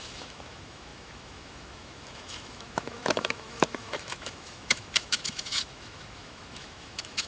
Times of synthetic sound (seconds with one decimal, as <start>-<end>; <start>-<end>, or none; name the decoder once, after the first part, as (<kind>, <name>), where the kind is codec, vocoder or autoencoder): 0.0-7.3 (autoencoder, DAC-VAE)